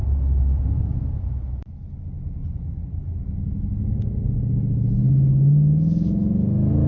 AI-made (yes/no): no